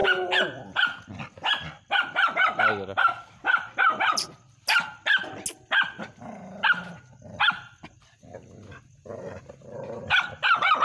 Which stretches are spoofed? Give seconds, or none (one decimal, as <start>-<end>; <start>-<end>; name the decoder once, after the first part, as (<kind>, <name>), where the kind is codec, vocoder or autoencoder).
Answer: 0.0-1.1 (vocoder, Vocos)